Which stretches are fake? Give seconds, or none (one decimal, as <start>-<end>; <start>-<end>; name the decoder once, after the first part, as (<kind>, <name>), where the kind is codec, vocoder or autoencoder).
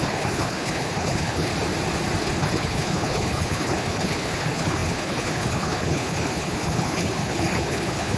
0.0-1.5 (codec, HILCodec); 2.2-8.2